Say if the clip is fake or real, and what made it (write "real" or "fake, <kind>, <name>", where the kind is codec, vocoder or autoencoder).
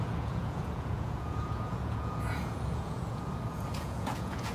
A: fake, vocoder, Vocos